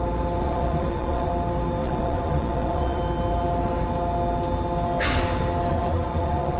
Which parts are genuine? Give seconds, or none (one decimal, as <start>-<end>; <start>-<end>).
0.0-0.4; 1.3-1.8; 3.0-5.7